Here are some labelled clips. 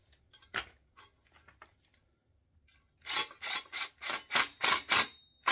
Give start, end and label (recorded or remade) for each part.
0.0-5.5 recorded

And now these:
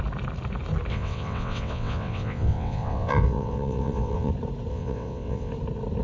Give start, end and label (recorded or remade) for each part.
0.0-0.9 recorded; 0.9-4.3 remade; 4.3-4.7 recorded; 4.7-5.5 remade; 5.5-6.0 recorded

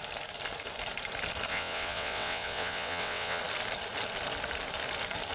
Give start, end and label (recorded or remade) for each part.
0.0-1.5 recorded; 1.5-3.4 remade; 3.4-5.3 recorded

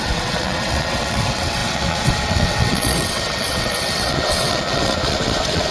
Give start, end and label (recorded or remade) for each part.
0.0-5.7 remade

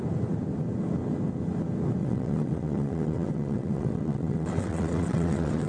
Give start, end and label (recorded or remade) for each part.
0.0-2.0 recorded; 2.0-5.7 remade